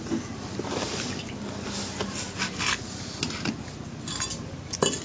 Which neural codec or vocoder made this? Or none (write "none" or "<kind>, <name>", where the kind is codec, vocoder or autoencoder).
none